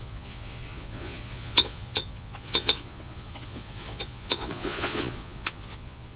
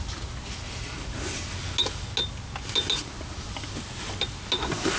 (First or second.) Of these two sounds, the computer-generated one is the first